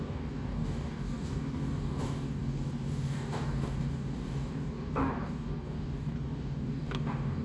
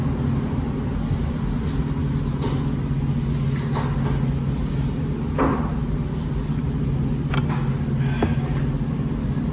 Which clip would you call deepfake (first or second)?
first